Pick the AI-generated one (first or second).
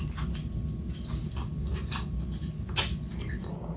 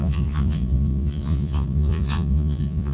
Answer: second